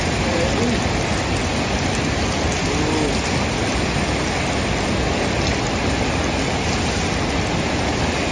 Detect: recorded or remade recorded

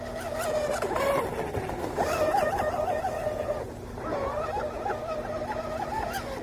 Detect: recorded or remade recorded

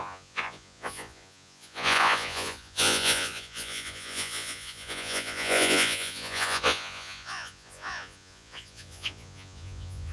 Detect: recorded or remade remade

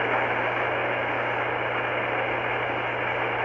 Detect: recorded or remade recorded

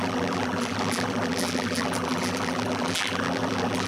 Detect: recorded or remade remade